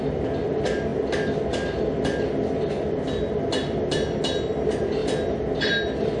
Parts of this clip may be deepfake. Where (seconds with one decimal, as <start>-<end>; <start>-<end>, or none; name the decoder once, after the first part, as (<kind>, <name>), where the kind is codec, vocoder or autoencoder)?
none